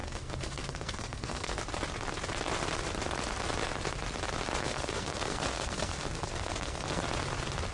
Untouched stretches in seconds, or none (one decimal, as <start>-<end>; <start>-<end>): 1.6-4.6; 7.0-7.7